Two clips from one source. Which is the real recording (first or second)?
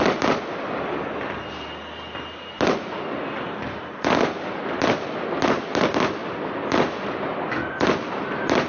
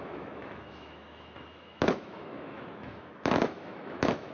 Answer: first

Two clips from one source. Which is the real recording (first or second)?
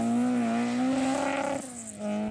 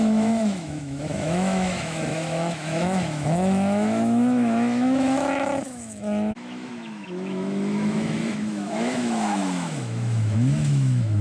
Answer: first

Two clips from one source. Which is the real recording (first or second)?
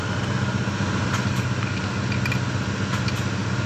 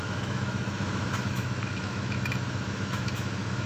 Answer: first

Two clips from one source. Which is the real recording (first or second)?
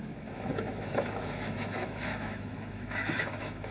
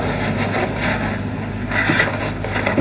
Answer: second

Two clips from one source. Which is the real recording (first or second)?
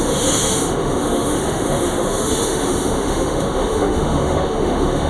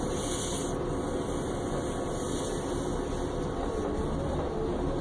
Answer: second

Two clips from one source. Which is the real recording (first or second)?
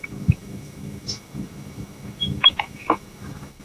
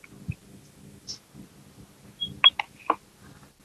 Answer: second